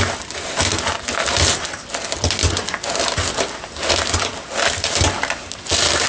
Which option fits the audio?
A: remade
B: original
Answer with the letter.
B